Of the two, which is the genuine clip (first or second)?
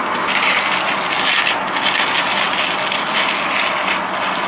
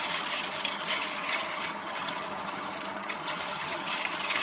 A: first